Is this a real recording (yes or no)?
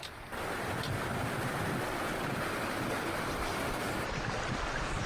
yes